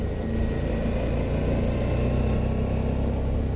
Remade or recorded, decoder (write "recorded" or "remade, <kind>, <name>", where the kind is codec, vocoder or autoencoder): recorded